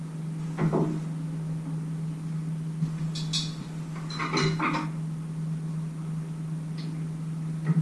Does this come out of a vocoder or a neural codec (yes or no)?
no